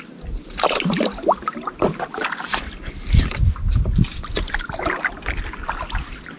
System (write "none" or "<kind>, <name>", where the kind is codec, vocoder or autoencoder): none